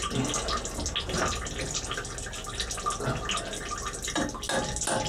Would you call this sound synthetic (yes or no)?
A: no